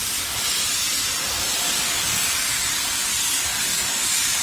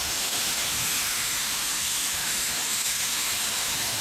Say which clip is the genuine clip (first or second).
first